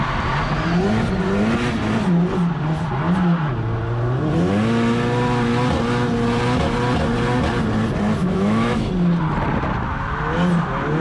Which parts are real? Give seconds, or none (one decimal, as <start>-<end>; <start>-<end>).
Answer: 0.0-8.2; 8.9-11.0